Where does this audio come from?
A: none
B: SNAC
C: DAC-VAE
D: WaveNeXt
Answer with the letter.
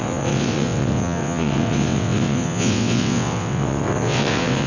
D